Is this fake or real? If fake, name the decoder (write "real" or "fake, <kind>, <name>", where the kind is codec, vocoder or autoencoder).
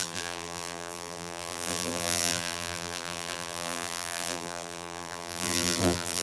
fake, vocoder, BigVGAN v2